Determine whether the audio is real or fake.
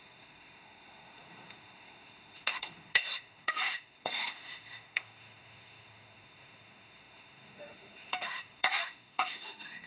fake